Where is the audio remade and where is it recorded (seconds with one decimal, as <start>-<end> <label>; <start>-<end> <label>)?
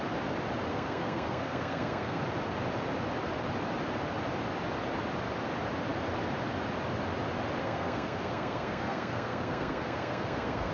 0.0-0.7 recorded; 0.7-2.2 remade; 2.2-7.6 recorded; 7.6-10.7 remade